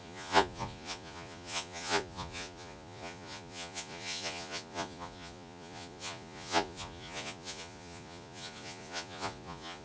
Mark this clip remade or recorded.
remade